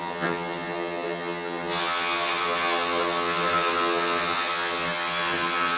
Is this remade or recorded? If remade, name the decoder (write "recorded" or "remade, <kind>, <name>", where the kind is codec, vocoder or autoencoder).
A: remade, vocoder, HiFi-GAN